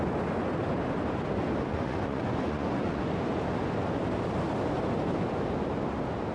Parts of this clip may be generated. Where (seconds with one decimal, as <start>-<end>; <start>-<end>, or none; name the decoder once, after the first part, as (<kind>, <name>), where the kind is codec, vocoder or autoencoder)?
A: 1.7-3.1 (vocoder, Vocos)